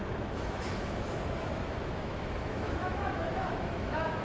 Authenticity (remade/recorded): remade